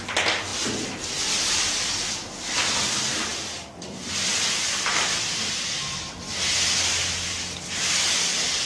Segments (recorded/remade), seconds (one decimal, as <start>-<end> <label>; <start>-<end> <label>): 0.0-8.7 recorded